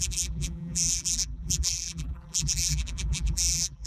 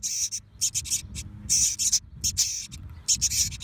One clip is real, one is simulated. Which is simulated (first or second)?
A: first